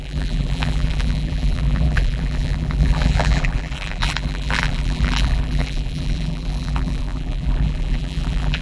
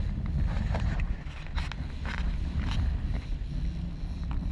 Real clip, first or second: second